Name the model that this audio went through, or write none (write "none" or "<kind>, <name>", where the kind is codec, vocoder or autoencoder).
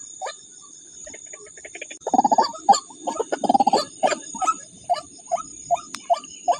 vocoder, BigVGAN v2